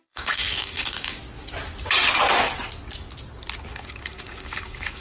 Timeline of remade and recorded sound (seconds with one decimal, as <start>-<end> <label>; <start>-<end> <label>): 0.0-1.2 remade; 1.2-3.7 recorded; 3.7-5.0 remade